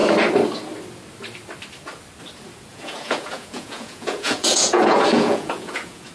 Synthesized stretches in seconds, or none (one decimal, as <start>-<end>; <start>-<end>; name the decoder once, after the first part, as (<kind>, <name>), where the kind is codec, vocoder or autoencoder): 2.7-6.1 (vocoder, Vocos)

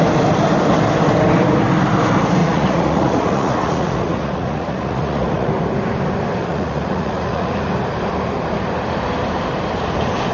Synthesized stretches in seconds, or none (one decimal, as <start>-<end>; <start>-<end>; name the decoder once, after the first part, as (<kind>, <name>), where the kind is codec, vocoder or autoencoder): 2.4-5.5 (vocoder, Vocos); 6.4-7.6

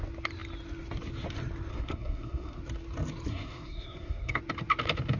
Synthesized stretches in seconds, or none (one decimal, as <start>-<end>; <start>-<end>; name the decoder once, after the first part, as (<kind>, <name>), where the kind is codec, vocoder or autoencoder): 1.7-2.6 (codec, SNAC); 3.3-4.4

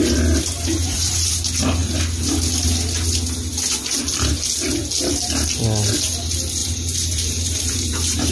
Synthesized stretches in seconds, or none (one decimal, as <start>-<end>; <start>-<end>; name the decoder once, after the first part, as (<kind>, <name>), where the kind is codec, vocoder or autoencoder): 0.8-1.3 (vocoder, BigVGAN v2); 6.6-8.3

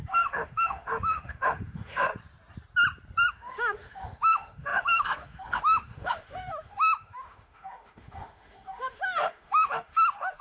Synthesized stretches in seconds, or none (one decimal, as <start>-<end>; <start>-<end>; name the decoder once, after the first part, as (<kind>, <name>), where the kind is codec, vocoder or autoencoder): 0.0-2.1 (autoencoder, DAC-VAE); 3.3-10.4

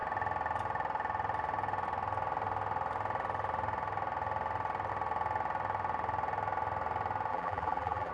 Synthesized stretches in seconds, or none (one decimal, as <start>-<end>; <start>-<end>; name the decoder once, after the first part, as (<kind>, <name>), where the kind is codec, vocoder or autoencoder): 7.3-8.1 (vocoder, BigVGAN v2)

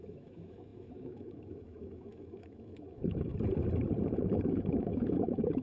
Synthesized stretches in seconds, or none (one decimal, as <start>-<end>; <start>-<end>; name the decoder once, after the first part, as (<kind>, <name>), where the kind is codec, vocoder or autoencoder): 0.0-3.3 (autoencoder, DAC-VAE); 4.2-5.6